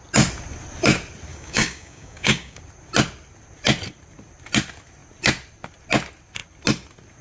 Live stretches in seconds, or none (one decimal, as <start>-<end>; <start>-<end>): 0.0-1.3; 2.6-7.2